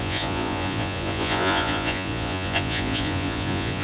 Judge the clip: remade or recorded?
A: remade